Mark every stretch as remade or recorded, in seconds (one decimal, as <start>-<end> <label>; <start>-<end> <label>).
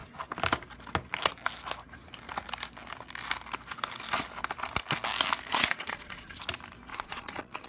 0.0-5.5 recorded; 5.5-6.4 remade; 6.4-6.9 recorded; 6.9-7.7 remade